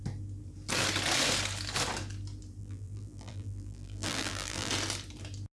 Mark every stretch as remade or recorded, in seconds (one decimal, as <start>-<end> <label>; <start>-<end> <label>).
0.0-2.6 recorded; 2.6-4.7 remade; 4.7-5.6 recorded

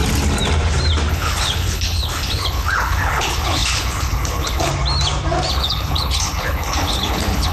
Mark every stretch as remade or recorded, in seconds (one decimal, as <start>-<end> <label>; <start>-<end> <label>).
0.0-1.1 recorded; 1.1-4.7 remade; 4.7-5.5 recorded; 5.5-7.5 remade

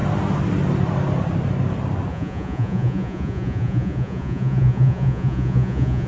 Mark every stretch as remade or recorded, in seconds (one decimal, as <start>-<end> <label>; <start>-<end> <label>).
0.0-2.1 recorded; 2.1-6.1 remade

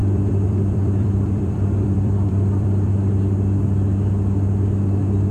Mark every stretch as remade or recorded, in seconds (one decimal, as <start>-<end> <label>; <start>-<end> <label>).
0.0-3.1 remade; 3.1-5.3 recorded

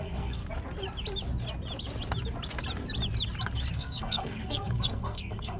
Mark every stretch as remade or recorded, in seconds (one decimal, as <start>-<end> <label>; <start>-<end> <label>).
0.0-0.4 remade; 0.4-3.7 recorded; 3.7-5.6 remade

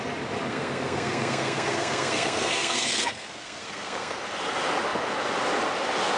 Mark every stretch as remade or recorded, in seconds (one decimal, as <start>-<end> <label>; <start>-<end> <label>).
0.0-0.5 recorded; 0.5-4.2 remade; 4.2-6.2 recorded

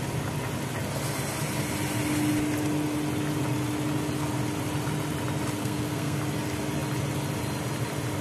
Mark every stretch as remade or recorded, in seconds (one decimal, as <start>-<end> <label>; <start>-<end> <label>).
0.0-5.6 recorded; 5.6-6.2 remade; 6.2-8.2 recorded

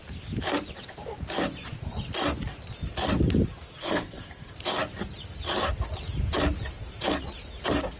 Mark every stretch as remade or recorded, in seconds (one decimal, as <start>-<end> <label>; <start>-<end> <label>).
0.0-3.8 recorded; 3.8-4.5 remade; 4.5-8.0 recorded